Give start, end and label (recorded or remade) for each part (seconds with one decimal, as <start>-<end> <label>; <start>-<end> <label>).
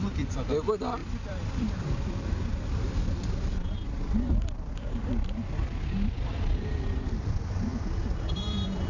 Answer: 0.0-7.7 remade; 7.7-8.4 recorded; 8.4-8.9 remade